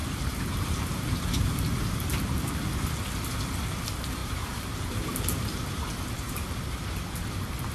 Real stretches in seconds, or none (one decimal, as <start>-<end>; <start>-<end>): 2.5-4.2; 6.5-7.7